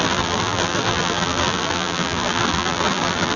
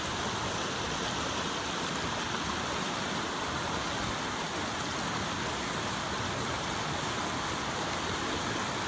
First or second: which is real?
second